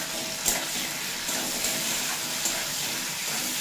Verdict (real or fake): real